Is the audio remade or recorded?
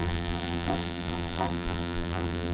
remade